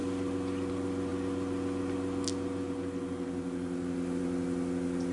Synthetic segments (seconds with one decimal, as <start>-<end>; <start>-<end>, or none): none